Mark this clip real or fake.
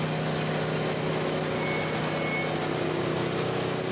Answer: real